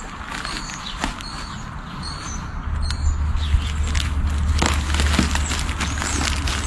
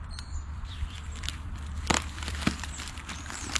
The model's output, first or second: second